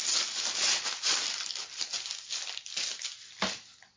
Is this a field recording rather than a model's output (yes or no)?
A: yes